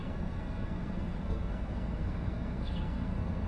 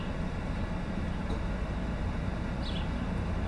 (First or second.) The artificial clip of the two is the first